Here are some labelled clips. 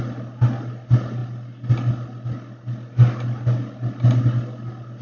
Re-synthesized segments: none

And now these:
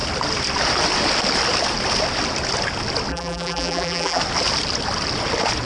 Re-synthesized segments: 3.1-4.2 (vocoder, BigVGAN v2)

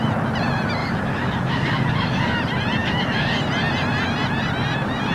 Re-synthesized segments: 0.8-2.4 (codec, DAC); 2.8-3.4